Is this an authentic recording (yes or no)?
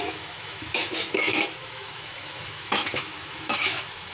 no